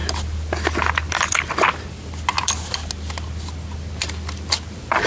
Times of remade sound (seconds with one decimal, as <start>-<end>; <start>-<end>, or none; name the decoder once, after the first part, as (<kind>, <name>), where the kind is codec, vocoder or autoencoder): none